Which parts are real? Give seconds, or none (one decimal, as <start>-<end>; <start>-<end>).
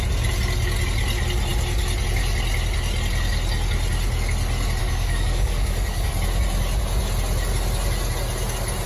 0.0-4.8; 6.1-8.9